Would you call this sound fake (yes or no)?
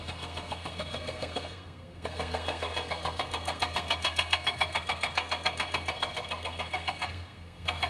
yes